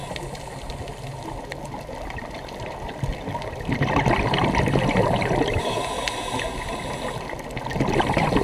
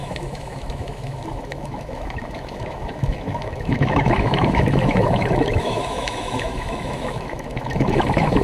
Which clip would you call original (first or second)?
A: first